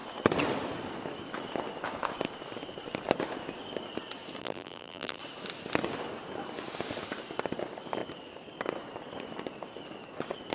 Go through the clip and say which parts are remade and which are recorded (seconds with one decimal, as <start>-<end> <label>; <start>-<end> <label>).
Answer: 0.0-4.4 recorded; 4.4-5.2 remade; 5.2-10.5 recorded